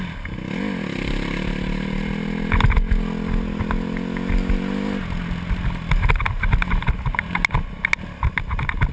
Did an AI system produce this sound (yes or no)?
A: no